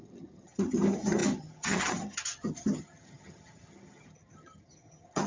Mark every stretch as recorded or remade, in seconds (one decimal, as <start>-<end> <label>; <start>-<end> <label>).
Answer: 0.0-5.3 remade

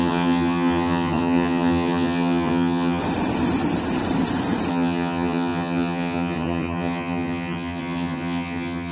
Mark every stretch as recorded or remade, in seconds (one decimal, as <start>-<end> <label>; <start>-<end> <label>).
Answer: 0.0-3.0 remade; 3.0-4.7 recorded; 4.7-8.9 remade

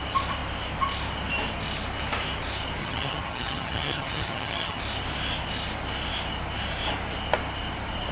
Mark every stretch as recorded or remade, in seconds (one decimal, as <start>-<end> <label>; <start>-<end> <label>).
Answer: 0.0-2.8 recorded; 2.8-4.8 remade; 4.8-8.1 recorded

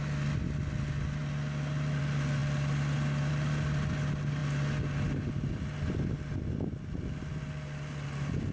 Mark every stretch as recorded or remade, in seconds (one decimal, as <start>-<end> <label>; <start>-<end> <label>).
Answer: 0.0-8.5 recorded

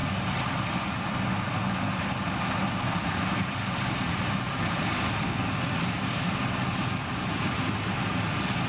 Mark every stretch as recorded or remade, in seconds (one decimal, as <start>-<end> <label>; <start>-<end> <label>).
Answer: 0.0-8.7 recorded

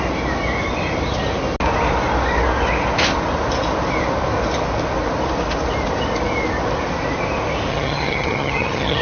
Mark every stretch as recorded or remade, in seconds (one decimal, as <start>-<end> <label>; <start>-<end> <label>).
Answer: 0.0-7.7 recorded; 7.7-9.0 remade

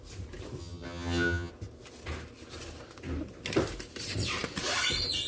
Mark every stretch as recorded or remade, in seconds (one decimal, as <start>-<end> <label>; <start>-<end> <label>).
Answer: 0.0-0.6 recorded; 0.6-1.5 remade; 1.5-5.3 recorded

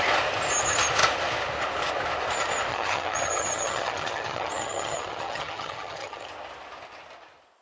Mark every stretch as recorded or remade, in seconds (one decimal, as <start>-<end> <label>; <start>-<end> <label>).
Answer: 0.0-2.7 recorded; 2.7-6.3 remade; 6.3-7.6 recorded